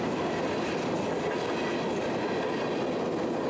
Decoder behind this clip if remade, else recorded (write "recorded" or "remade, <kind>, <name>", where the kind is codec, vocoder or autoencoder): recorded